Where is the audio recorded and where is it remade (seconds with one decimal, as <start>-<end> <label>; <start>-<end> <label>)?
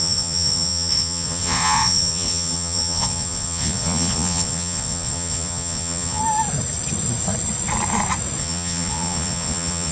0.0-6.2 remade; 6.2-8.4 recorded; 8.4-9.9 remade